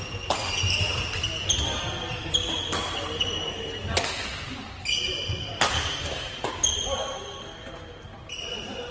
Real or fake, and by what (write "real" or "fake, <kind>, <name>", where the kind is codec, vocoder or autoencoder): real